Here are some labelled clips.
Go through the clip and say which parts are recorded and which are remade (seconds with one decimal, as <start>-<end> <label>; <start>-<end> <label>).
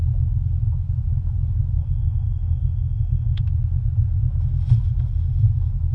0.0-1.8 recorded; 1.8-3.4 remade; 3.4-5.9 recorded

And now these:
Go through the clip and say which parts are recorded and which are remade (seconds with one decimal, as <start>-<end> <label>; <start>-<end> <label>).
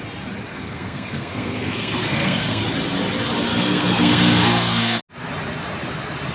0.0-0.5 recorded; 0.5-2.6 remade; 2.6-3.5 recorded; 3.5-5.0 remade; 5.0-6.3 recorded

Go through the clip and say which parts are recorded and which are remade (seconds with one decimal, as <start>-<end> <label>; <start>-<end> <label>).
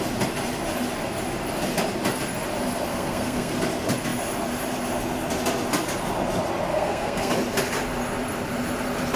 0.0-2.9 recorded; 2.9-3.5 remade; 3.5-6.7 recorded; 6.7-7.3 remade; 7.3-9.2 recorded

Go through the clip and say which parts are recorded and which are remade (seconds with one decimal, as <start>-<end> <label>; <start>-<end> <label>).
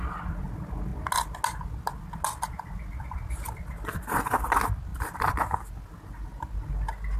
0.0-7.2 recorded